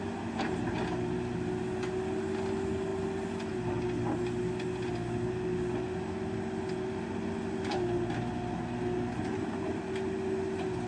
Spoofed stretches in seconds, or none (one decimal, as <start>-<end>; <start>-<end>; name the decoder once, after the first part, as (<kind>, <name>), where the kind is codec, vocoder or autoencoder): none